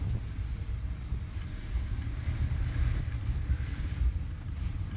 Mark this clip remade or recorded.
remade